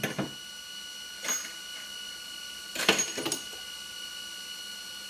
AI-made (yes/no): no